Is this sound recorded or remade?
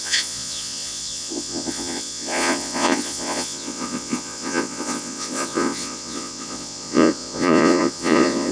remade